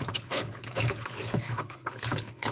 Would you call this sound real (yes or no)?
no